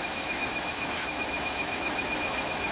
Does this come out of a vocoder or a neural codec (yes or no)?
yes